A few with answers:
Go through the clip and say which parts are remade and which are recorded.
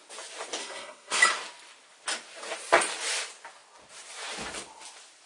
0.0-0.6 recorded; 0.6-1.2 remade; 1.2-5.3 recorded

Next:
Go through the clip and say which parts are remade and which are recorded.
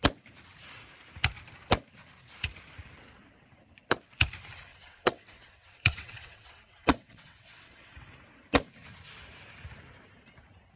0.0-4.7 recorded; 4.7-8.0 remade; 8.0-10.8 recorded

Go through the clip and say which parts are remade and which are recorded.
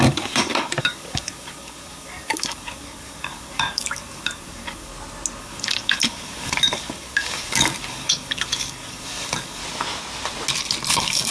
0.0-4.9 remade; 4.9-5.4 recorded; 5.4-9.6 remade; 9.6-10.9 recorded; 10.9-11.3 remade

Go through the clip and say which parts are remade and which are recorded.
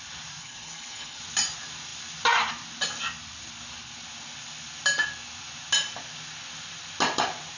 0.0-0.4 recorded; 0.4-1.2 remade; 1.2-7.6 recorded